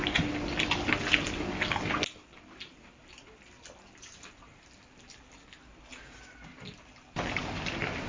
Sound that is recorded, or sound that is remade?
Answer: recorded